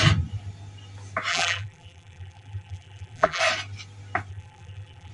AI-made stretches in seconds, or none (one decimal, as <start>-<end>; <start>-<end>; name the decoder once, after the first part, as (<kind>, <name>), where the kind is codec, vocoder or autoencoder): 1.3-3.4 (vocoder, BigVGAN v2); 4.3-5.1